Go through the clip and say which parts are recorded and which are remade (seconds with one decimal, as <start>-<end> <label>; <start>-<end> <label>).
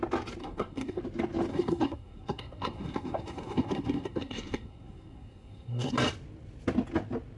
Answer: 0.0-0.4 recorded; 0.4-1.0 remade; 1.0-1.5 recorded; 1.5-5.9 remade; 5.9-7.4 recorded